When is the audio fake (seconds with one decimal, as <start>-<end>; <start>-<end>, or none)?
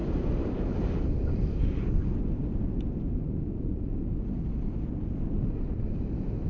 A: none